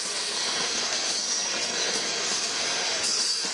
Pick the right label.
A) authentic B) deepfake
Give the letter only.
B